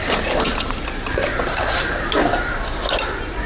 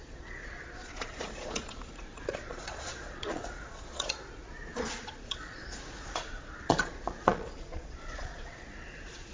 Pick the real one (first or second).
first